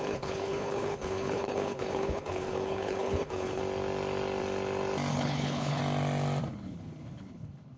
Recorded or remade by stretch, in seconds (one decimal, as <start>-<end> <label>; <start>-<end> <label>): 0.0-3.6 remade; 3.6-5.1 recorded; 5.1-5.8 remade; 5.8-6.5 recorded; 6.5-7.8 remade